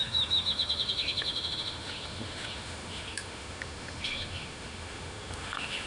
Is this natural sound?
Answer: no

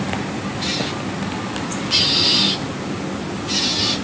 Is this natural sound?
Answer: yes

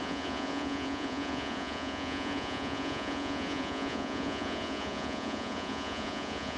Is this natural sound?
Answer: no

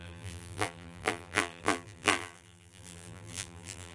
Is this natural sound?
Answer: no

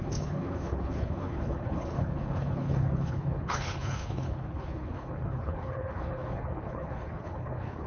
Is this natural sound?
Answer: no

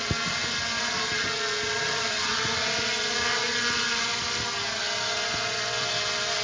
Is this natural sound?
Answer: yes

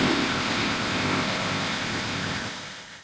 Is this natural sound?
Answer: no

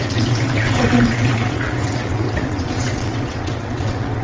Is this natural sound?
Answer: no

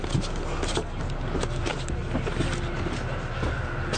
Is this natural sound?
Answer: yes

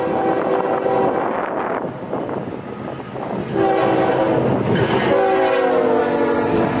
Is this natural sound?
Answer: yes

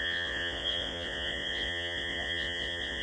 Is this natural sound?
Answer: no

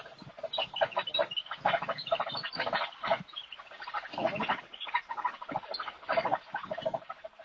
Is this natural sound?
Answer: yes